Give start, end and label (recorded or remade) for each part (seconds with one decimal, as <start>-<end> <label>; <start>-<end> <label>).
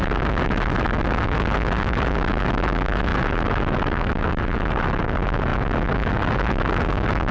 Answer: 0.0-7.3 remade